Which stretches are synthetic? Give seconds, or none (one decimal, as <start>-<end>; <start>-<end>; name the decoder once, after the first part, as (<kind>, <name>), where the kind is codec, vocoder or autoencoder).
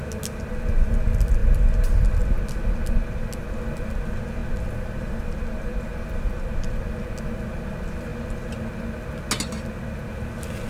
4.4-5.2 (vocoder, BigVGAN v2)